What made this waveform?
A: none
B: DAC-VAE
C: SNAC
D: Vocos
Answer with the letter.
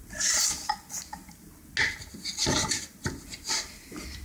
A